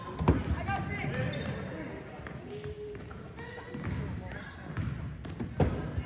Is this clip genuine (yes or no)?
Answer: yes